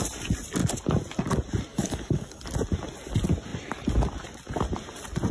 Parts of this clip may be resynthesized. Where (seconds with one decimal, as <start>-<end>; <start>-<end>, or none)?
1.7-2.4